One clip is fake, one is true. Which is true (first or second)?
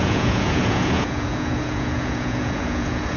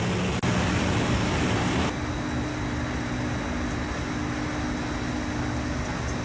second